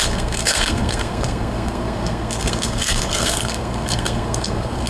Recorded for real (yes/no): no